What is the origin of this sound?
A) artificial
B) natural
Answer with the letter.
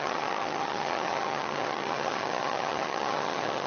A